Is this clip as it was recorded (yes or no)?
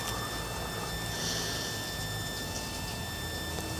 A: yes